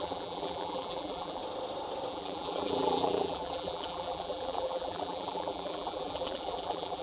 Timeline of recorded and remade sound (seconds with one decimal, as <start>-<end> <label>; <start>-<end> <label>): 0.0-1.4 remade; 1.4-2.1 recorded; 2.1-7.0 remade